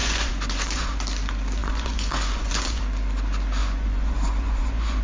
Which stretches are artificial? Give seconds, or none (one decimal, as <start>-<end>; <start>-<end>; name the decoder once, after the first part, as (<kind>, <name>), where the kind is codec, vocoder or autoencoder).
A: 0.0-1.0 (vocoder, Vocos); 1.6-2.8; 3.6-5.0